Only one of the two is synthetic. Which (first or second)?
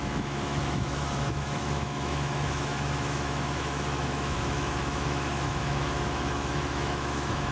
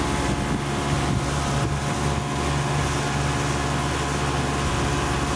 first